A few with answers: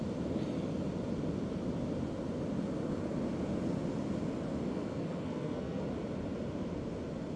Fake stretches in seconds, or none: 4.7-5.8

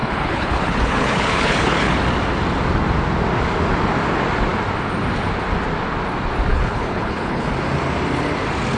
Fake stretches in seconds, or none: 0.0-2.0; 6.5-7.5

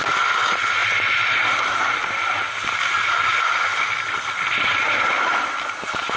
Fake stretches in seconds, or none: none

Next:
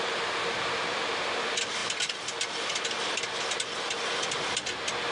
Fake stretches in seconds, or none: none

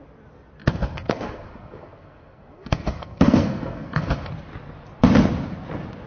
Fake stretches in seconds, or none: 0.6-4.3

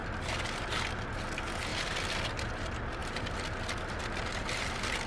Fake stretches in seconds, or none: none